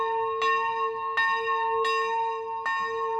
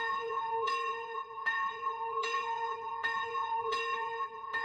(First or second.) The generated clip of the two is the second